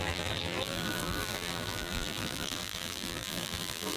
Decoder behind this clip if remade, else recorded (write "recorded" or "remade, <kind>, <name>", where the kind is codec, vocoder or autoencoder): remade, vocoder, BigVGAN v2